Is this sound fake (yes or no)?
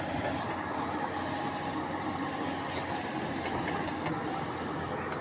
no